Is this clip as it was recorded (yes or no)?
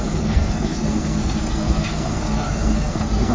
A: no